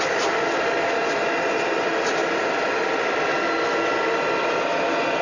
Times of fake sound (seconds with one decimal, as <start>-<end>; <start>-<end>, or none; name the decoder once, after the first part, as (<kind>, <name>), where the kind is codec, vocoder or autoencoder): none